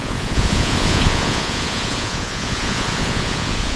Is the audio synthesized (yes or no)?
yes